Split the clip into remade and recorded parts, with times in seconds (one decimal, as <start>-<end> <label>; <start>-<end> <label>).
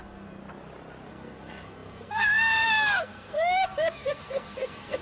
0.0-0.4 remade; 0.4-1.1 recorded; 1.1-5.0 remade